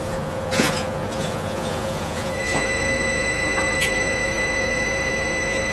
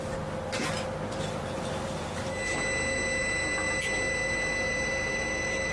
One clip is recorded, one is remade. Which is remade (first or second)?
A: first